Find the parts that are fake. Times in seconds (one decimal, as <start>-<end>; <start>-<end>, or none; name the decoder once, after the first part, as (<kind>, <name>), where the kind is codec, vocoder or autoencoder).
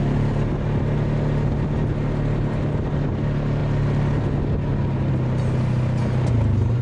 none